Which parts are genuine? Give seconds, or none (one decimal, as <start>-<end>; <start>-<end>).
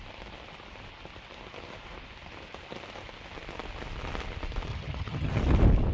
0.0-4.7; 5.4-5.9